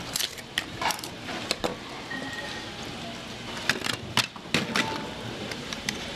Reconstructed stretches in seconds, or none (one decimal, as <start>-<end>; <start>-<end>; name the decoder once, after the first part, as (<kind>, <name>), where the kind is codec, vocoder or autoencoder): 0.0-1.7 (vocoder, BigVGAN v2); 5.4-6.2